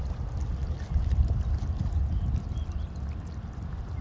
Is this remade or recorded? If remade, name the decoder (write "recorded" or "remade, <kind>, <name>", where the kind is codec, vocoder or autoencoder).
recorded